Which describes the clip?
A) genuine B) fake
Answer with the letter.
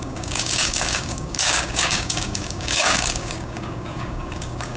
B